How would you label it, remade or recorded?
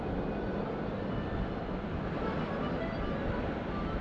recorded